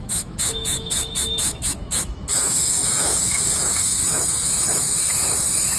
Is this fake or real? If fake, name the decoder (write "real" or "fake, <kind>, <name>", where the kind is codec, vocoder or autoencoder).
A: fake, autoencoder, DAC-VAE